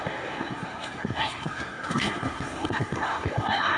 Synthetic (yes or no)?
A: yes